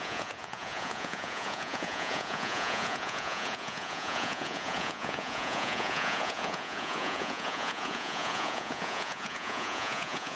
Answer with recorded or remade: remade